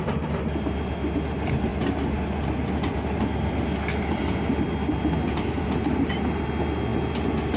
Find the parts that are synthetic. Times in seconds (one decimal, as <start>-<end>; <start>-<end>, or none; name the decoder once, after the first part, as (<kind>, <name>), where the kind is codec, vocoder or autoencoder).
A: none